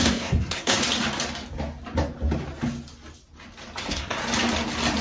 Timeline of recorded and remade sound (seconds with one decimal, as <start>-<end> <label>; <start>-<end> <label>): 0.0-0.8 remade; 0.8-3.8 recorded; 3.8-4.2 remade; 4.2-5.0 recorded